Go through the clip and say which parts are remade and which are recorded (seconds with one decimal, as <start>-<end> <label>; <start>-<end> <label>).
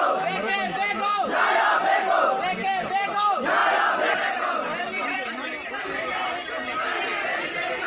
0.0-7.9 recorded